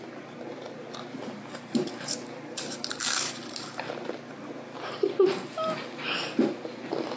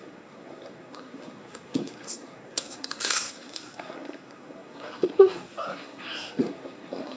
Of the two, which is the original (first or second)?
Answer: first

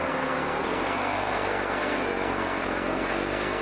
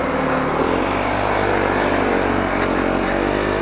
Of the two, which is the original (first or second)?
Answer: second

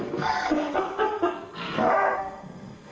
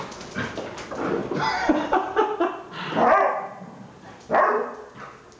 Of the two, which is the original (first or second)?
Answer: second